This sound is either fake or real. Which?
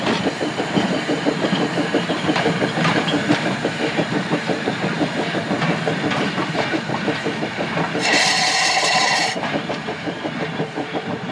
fake